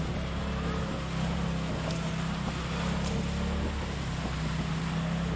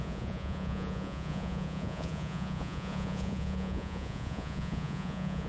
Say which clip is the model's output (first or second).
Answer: second